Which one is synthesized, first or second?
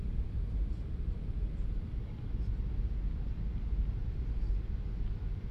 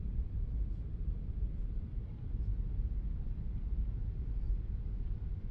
second